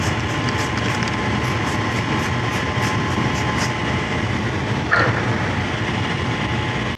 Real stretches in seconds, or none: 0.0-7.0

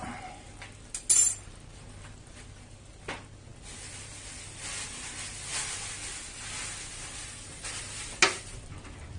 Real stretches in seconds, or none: 0.0-9.2

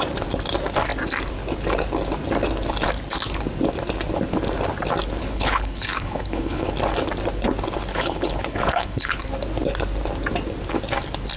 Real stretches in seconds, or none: 0.0-5.2; 6.7-7.9; 9.2-11.4

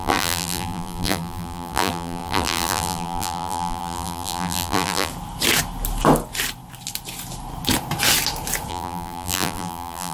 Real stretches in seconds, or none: 5.1-8.7

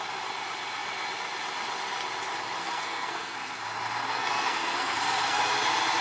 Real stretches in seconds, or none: 0.0-2.6; 3.6-4.1; 5.4-6.0

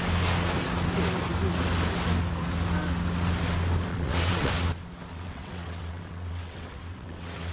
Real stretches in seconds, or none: 0.0-3.9; 4.5-5.1